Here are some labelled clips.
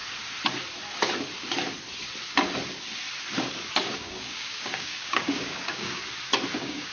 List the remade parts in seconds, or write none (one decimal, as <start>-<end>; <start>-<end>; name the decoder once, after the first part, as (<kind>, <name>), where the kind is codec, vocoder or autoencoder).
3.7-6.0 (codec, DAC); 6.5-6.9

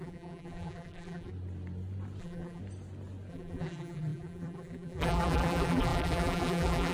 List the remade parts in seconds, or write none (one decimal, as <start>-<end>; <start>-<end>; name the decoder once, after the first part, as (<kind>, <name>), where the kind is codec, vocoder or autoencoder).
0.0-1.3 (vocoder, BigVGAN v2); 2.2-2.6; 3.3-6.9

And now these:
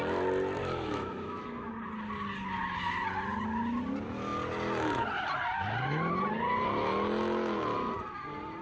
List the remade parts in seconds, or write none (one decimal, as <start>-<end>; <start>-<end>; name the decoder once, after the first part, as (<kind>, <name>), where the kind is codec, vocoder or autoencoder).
0.6-1.7 (autoencoder, DAC-VAE)

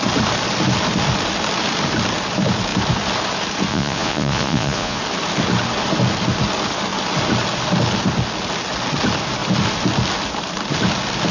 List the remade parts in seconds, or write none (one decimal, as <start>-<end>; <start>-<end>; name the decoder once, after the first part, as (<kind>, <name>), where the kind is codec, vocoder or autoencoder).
3.7-5.0 (vocoder, Vocos)